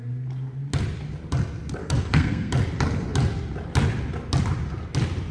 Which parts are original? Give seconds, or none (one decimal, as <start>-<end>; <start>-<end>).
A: 0.0-1.8; 2.5-5.3